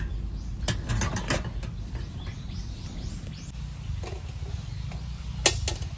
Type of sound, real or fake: real